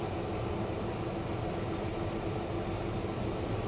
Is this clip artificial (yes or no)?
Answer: yes